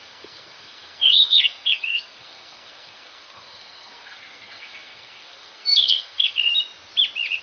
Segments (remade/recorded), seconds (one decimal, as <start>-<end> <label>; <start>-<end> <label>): 0.0-6.5 remade; 6.5-7.4 recorded